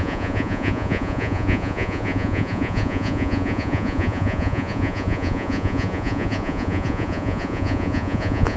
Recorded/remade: remade